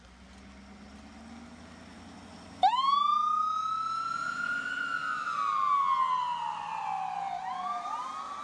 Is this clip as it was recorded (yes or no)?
yes